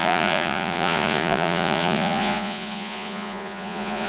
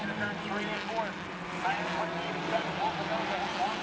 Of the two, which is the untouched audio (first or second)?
second